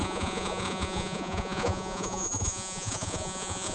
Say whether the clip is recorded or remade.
remade